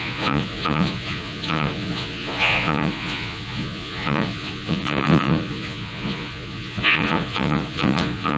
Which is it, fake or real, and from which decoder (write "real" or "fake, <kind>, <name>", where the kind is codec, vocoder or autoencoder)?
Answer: fake, vocoder, Vocos